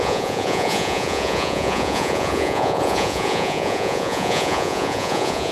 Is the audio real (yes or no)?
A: no